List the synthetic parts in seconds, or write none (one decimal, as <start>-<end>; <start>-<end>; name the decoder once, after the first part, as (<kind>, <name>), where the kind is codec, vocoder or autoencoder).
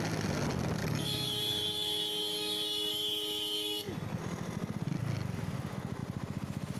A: 0.8-4.2 (codec, DAC)